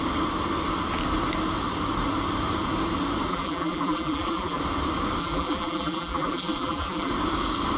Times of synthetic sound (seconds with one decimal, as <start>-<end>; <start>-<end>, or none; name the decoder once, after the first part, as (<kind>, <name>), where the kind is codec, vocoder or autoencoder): 3.3-4.6 (vocoder, BigVGAN v2); 5.2-7.1